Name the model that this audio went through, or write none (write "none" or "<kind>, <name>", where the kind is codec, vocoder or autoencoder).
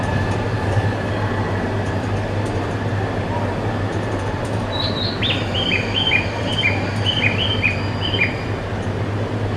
vocoder, BigVGAN v2